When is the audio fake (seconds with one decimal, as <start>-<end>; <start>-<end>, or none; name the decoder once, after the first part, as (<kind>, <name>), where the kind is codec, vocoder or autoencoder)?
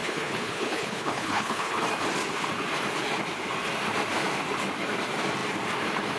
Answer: 0.0-1.8 (codec, HILCodec)